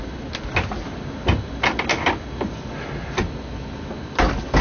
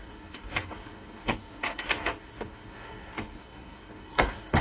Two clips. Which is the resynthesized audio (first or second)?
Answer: second